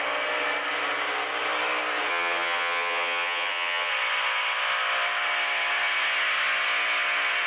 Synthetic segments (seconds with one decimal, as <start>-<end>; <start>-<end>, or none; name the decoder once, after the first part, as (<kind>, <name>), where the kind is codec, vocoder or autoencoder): 2.1-3.9 (vocoder, HiFi-GAN)